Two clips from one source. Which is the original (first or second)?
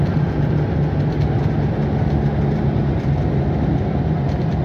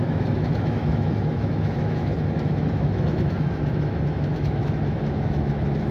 first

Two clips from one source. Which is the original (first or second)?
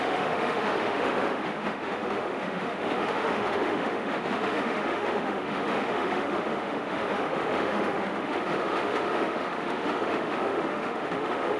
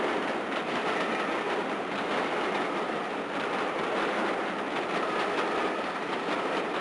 second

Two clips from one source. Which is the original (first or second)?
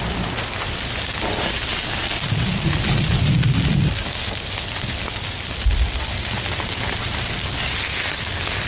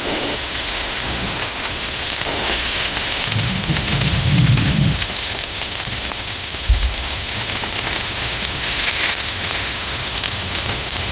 first